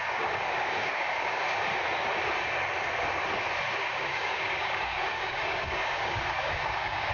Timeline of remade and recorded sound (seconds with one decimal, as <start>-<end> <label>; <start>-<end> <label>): 0.0-1.7 remade; 1.7-3.9 recorded; 3.9-7.1 remade